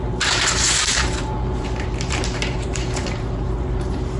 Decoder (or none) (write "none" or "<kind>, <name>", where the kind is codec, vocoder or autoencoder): vocoder, BigVGAN v2